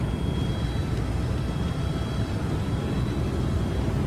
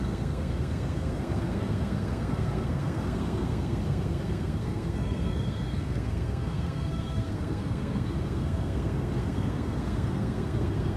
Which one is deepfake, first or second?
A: second